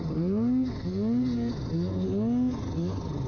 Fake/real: real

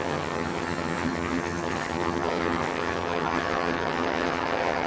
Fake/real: fake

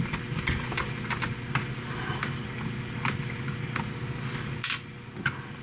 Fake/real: real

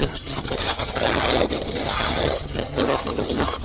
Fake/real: fake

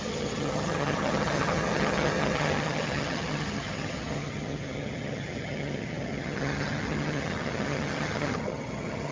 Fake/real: fake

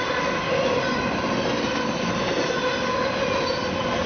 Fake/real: real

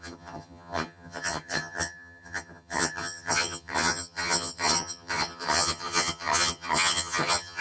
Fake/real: fake